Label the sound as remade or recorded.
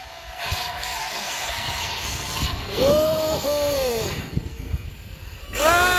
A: remade